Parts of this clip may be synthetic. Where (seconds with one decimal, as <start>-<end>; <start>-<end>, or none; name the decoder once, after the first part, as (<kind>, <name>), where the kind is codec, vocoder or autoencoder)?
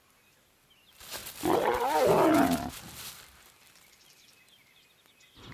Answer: none